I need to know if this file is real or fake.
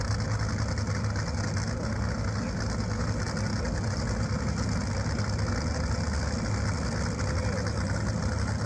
real